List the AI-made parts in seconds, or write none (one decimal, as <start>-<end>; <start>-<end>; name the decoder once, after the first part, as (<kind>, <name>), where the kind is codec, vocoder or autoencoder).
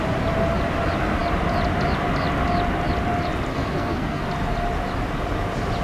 3.5-4.2 (codec, SNAC)